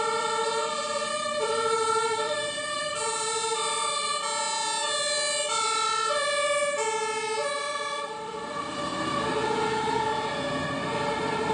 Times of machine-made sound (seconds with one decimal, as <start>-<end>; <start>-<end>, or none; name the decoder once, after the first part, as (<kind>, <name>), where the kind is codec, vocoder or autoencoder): 0.0-4.1 (vocoder, BigVGAN v2); 5.4-8.9